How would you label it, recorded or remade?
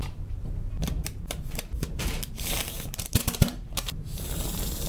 remade